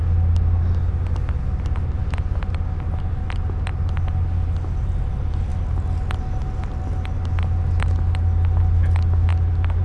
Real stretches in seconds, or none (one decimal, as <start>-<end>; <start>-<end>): 0.0-9.8